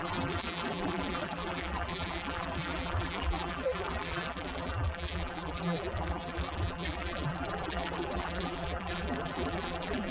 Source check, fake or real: fake